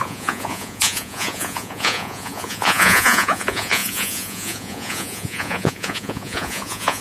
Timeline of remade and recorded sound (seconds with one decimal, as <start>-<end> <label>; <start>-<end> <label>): 0.0-7.0 remade